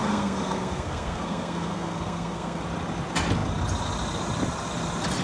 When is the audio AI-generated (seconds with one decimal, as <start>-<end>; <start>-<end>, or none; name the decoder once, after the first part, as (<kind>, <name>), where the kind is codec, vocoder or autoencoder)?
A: 0.0-2.6 (codec, SNAC)

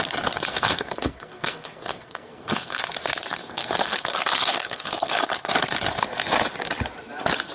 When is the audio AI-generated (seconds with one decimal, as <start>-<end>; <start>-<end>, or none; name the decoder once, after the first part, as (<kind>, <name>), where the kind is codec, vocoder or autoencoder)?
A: 0.5-2.8 (codec, SNAC); 3.4-5.2

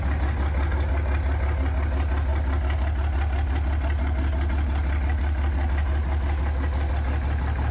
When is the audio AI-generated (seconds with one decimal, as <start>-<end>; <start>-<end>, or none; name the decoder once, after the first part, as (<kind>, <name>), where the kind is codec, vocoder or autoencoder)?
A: none

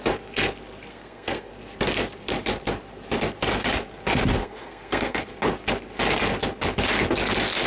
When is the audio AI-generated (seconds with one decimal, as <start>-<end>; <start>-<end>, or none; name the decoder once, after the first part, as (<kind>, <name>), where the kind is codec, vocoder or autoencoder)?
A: 0.9-1.5 (codec, SNAC); 4.4-5.2